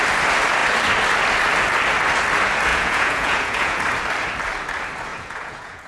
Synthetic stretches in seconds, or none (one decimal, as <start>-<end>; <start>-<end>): 2.7-3.8; 5.1-5.9